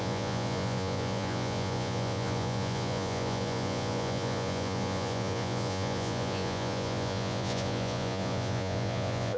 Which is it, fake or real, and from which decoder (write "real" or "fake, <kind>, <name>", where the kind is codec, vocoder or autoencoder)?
fake, vocoder, Vocos